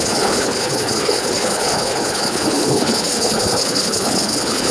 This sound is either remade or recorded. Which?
remade